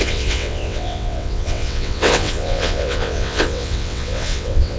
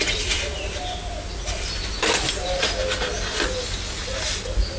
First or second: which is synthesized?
first